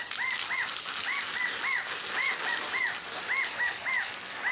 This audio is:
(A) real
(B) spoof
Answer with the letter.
A